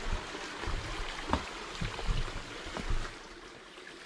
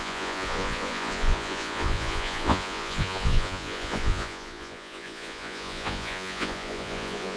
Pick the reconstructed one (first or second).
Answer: second